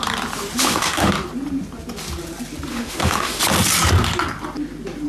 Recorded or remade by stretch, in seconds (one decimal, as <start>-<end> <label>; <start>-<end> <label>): 0.0-0.6 recorded; 0.6-1.1 remade; 1.1-2.7 recorded; 2.7-3.4 remade; 3.4-5.1 recorded

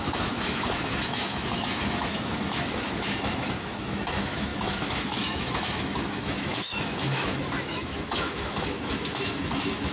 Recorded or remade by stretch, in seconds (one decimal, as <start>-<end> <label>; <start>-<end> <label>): 0.0-9.9 remade